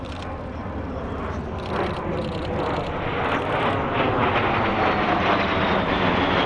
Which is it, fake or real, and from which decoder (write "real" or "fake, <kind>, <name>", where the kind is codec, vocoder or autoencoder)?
real